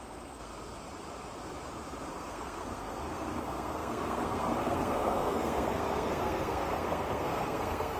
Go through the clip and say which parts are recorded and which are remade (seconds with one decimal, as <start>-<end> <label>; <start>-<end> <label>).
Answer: 0.0-0.5 remade; 0.5-2.1 recorded; 2.1-8.0 remade